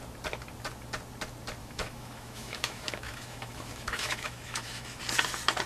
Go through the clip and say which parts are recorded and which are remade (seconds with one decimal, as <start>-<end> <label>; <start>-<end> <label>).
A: 0.0-1.6 recorded; 1.6-5.0 remade; 5.0-5.7 recorded